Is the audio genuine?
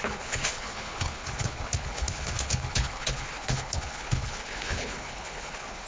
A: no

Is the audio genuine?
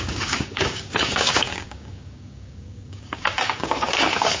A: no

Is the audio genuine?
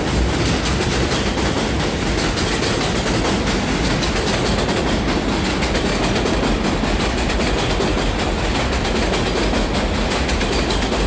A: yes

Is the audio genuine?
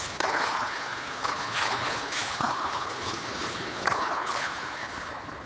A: no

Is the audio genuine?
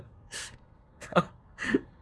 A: no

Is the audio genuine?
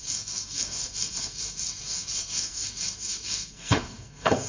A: no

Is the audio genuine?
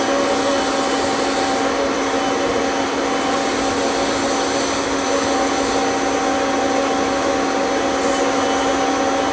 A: yes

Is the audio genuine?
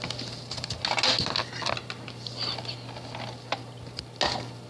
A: yes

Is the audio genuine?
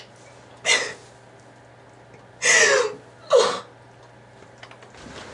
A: yes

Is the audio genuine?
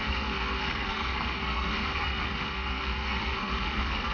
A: no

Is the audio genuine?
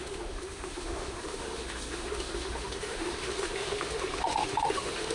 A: no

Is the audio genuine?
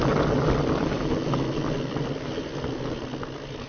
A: yes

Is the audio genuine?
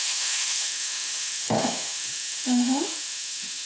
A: no